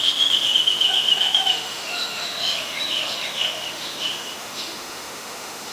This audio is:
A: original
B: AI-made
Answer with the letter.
B